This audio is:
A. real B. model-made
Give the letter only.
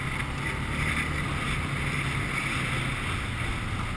A